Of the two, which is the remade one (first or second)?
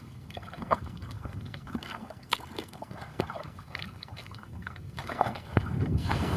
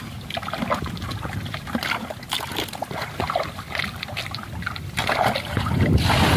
first